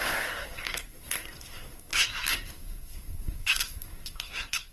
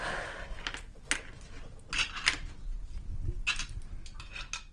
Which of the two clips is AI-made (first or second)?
first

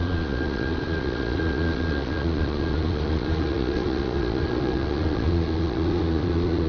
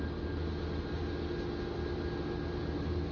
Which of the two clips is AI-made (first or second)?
first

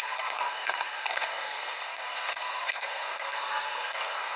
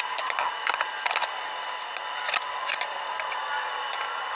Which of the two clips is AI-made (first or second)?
first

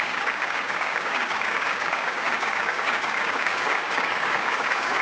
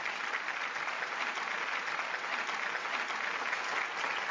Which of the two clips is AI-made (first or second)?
first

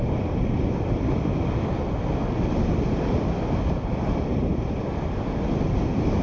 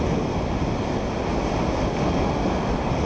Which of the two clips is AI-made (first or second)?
first